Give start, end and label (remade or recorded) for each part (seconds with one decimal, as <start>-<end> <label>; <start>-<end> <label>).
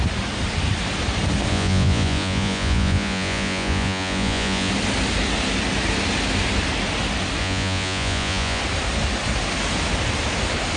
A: 0.0-1.5 recorded; 1.5-4.7 remade; 4.7-7.4 recorded; 7.4-8.6 remade; 8.6-10.8 recorded